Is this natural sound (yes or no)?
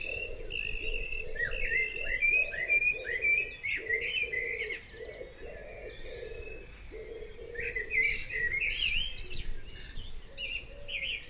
yes